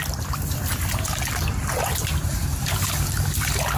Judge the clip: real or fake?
real